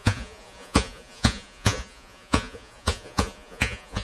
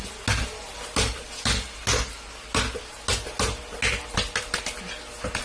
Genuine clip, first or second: second